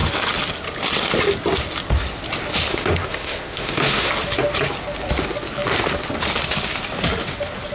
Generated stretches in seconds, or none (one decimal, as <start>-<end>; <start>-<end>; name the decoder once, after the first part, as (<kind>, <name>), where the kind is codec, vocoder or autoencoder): 2.7-4.1 (autoencoder, DAC-VAE)